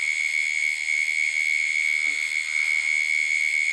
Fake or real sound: real